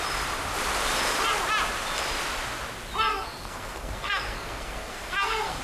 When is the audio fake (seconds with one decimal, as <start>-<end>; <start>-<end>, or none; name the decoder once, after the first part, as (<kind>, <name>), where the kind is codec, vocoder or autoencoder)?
3.1-5.6 (codec, SNAC)